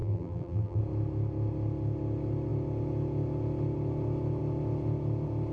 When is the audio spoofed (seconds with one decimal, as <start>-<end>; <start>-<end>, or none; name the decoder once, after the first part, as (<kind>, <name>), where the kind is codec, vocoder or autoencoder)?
0.0-0.8 (vocoder, BigVGAN v2)